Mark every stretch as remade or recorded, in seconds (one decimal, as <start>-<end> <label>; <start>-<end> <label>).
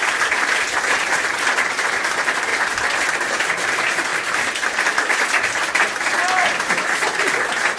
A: 0.0-7.8 recorded